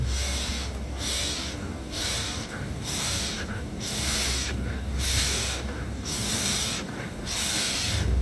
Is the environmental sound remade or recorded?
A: remade